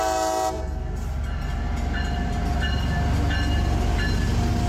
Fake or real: real